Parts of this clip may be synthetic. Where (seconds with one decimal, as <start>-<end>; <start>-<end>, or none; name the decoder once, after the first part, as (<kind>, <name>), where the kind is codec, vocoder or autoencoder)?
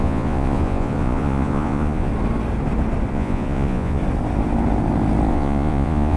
0.0-2.1 (vocoder, Vocos); 3.1-4.0; 5.3-6.2